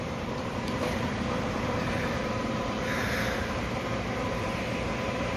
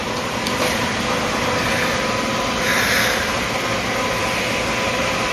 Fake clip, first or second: first